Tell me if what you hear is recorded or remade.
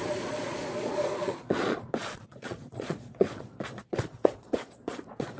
remade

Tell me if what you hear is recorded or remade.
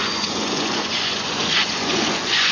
remade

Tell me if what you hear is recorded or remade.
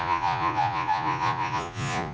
remade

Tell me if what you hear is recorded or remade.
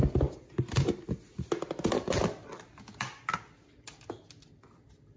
recorded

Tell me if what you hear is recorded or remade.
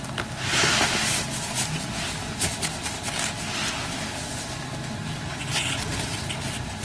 recorded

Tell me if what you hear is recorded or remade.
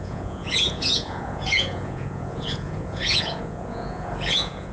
remade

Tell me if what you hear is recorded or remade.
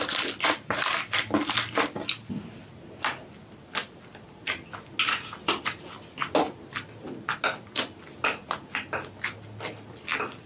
recorded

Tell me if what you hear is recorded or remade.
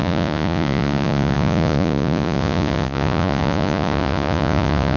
remade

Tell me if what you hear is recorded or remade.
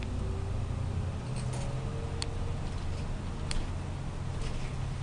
recorded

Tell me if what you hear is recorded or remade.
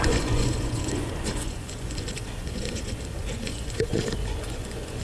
remade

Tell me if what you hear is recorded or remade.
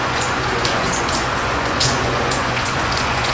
remade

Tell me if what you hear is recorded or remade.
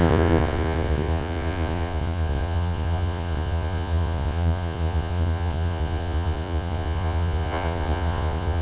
remade